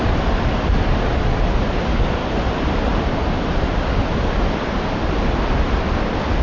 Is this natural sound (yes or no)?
yes